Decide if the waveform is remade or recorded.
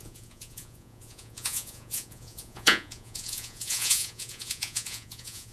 remade